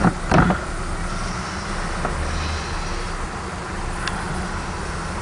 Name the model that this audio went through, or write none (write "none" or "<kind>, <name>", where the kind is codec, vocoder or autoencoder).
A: none